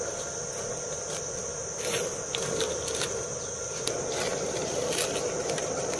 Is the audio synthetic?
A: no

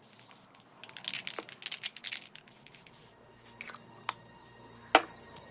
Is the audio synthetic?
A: no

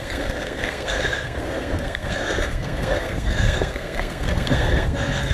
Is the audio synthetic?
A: yes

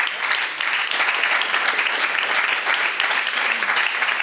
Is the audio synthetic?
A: no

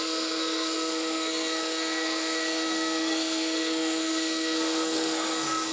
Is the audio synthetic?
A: yes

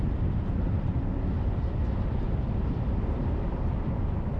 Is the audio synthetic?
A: no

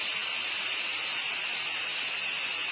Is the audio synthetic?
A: no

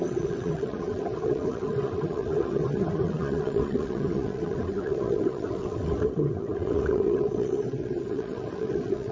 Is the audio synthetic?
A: yes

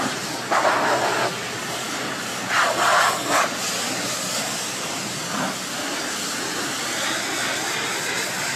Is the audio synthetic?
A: no